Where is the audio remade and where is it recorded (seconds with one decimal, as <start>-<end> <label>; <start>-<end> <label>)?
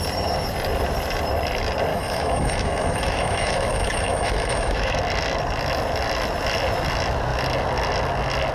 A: 0.0-1.9 recorded; 1.9-5.0 remade; 5.0-8.5 recorded